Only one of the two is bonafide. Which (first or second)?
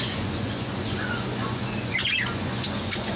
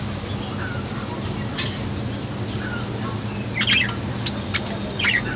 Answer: second